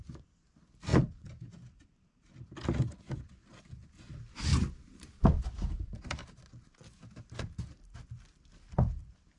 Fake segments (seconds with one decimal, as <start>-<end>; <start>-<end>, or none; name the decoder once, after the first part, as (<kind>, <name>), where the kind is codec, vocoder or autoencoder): 0.9-2.3 (vocoder, BigVGAN v2); 4.5-6.4